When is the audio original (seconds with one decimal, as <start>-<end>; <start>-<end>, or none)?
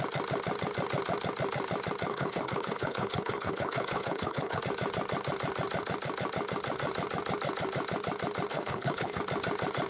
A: 0.0-2.1; 4.6-8.5; 9.2-9.9